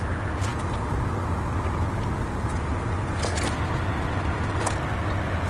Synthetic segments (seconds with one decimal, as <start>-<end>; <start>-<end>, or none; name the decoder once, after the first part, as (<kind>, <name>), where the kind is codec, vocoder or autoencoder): none